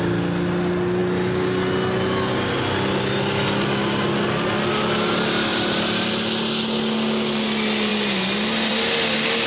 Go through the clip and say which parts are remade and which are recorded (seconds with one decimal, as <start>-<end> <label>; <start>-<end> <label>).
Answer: 0.0-5.5 recorded; 5.5-6.1 remade; 6.1-9.5 recorded